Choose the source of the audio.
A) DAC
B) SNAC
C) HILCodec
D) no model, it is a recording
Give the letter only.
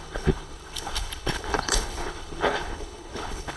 C